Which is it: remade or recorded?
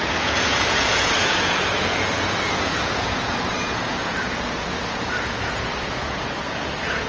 remade